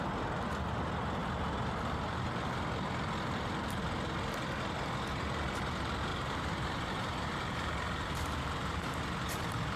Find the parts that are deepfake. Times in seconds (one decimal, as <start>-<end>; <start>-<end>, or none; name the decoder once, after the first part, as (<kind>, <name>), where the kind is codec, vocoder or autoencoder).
6.1-9.0 (vocoder, BigVGAN v2)